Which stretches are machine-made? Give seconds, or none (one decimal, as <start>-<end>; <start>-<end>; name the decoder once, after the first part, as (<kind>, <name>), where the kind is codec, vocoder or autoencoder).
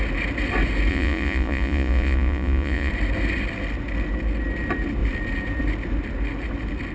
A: 0.9-2.9 (vocoder, Vocos)